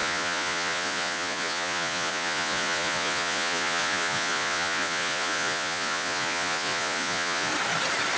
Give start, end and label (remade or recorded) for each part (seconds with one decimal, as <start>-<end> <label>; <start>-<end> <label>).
0.0-7.5 remade; 7.5-8.2 recorded